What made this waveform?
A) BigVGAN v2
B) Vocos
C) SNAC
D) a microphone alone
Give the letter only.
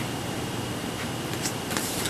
A